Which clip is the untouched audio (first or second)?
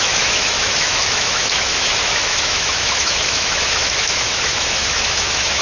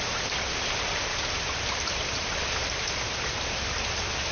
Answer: second